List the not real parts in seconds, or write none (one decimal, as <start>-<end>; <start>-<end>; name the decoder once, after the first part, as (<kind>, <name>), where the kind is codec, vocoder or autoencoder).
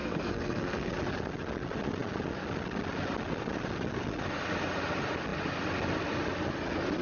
0.0-0.9 (codec, SNAC)